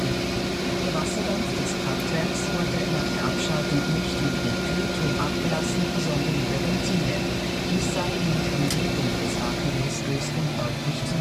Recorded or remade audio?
recorded